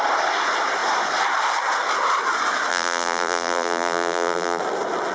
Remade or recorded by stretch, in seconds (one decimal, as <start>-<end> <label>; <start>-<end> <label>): 0.0-2.7 recorded; 2.7-4.6 remade; 4.6-5.1 recorded